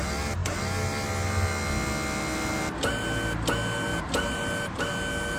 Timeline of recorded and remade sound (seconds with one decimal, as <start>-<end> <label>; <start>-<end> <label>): 0.0-3.9 recorded; 3.9-4.8 remade; 4.8-5.4 recorded